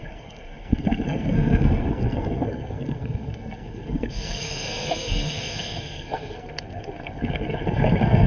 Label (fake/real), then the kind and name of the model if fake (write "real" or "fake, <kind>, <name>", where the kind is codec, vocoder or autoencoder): fake, codec, SNAC